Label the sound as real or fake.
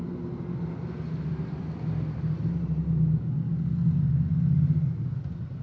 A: real